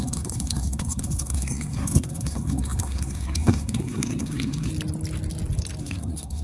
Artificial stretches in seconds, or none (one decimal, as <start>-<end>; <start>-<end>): 0.0-4.7; 5.8-6.4